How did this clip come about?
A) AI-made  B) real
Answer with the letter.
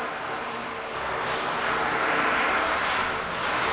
B